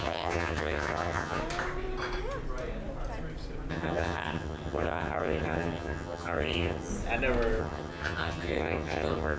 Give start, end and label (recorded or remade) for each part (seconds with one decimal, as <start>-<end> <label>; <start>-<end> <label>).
0.0-1.4 remade; 1.4-3.7 recorded; 3.7-6.9 remade; 6.9-7.6 recorded; 7.6-9.4 remade